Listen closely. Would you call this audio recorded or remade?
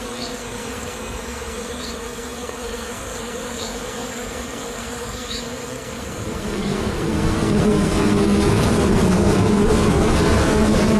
remade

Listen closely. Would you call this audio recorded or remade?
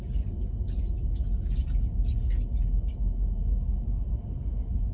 recorded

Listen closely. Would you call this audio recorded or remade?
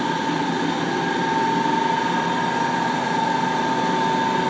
recorded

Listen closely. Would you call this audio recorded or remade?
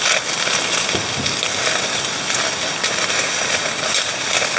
recorded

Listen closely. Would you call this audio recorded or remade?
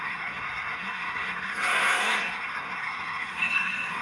remade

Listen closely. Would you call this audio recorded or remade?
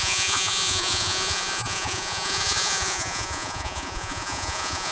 remade